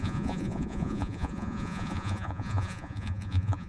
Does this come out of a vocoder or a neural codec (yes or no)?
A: yes